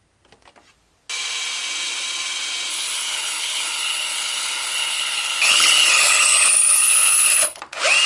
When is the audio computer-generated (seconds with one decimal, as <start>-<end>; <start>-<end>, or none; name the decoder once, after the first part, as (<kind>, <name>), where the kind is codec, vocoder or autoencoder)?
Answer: 2.7-7.6 (codec, HILCodec)